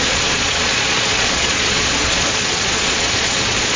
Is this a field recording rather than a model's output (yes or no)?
no